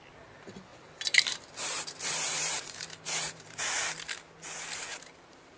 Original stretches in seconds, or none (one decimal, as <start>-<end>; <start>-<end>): 0.0-0.7; 3.7-4.9